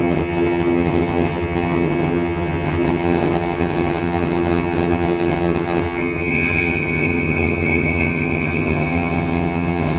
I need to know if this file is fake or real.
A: fake